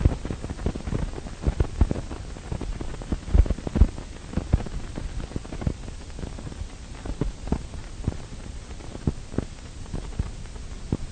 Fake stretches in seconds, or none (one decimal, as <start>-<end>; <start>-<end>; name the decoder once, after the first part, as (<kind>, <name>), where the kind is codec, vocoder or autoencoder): none